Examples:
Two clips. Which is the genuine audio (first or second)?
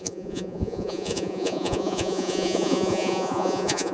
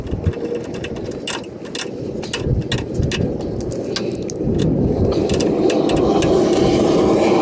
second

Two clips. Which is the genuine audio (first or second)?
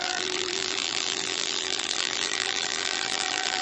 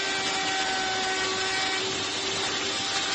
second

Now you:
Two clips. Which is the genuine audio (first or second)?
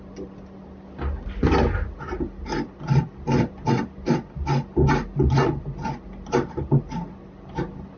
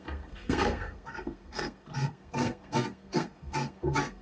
first